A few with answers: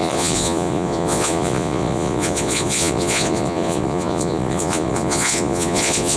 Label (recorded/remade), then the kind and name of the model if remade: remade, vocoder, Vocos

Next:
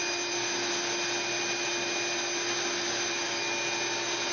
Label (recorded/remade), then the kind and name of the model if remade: recorded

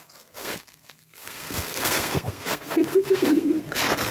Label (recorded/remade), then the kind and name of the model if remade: remade, codec, SNAC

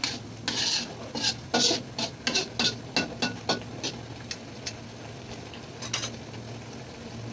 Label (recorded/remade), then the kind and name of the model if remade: recorded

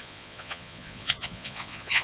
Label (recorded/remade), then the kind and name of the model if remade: remade, vocoder, Vocos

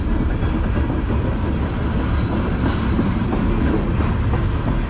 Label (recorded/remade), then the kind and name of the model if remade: recorded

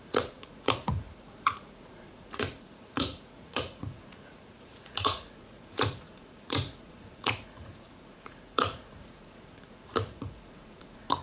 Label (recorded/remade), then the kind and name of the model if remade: remade, vocoder, Vocos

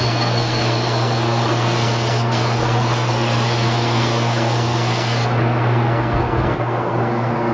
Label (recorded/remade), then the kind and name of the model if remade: remade, codec, SNAC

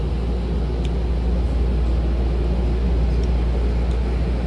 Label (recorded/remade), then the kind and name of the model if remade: recorded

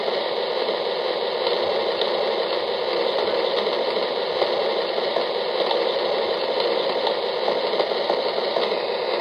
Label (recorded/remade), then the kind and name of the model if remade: recorded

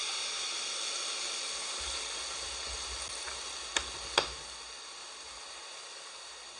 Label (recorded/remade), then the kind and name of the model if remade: recorded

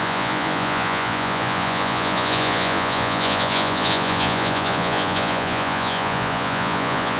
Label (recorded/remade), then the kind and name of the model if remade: remade, vocoder, Vocos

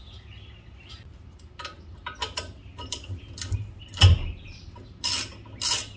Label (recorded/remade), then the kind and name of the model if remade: recorded